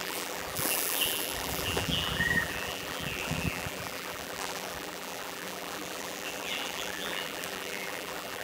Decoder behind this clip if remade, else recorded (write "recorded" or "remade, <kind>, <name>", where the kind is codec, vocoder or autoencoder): remade, vocoder, BigVGAN v2